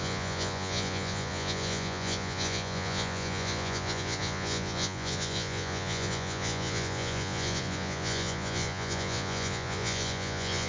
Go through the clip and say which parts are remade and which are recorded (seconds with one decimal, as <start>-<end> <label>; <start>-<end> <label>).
0.0-10.7 remade